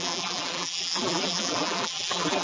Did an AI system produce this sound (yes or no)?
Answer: yes